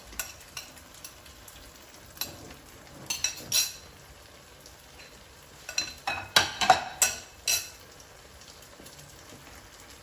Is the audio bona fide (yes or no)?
yes